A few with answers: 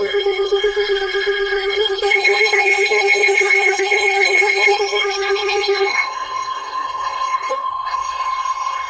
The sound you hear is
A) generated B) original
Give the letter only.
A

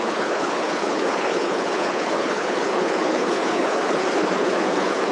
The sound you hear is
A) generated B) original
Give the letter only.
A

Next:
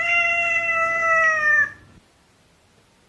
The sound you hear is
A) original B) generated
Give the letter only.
A